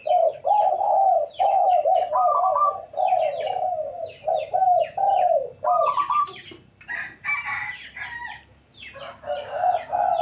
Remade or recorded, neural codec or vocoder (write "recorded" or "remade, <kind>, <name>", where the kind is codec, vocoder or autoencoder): recorded